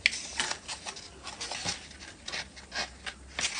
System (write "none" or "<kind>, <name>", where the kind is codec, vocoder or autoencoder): none